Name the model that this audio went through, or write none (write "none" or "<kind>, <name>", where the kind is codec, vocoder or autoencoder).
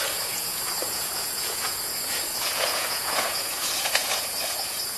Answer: vocoder, Vocos